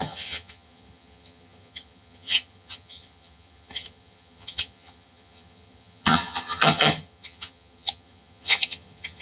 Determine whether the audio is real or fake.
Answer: fake